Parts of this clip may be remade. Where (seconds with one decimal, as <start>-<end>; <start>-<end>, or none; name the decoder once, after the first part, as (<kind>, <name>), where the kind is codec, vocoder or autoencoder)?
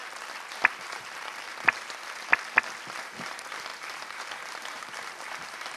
0.7-2.3 (vocoder, BigVGAN v2); 3.0-5.8